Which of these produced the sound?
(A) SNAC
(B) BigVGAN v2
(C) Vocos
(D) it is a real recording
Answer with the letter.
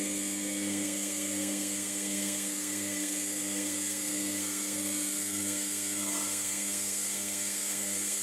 A